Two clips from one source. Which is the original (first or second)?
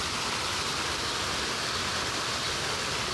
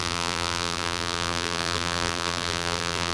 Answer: first